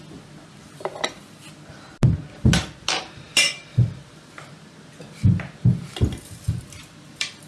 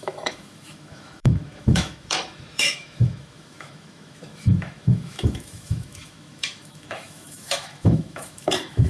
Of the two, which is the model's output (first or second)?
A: second